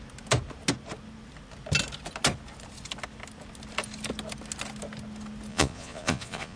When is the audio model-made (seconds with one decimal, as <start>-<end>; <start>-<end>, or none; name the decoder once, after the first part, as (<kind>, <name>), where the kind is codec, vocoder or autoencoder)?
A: 5.5-6.6 (vocoder, Vocos)